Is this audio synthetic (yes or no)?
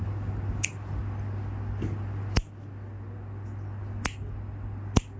no